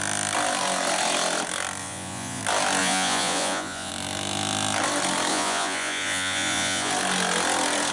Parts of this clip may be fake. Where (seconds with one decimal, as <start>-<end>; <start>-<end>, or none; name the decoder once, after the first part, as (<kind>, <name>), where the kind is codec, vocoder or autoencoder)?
1.8-2.4 (vocoder, Vocos); 2.8-3.9; 5.3-6.9